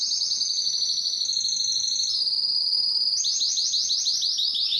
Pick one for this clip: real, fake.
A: real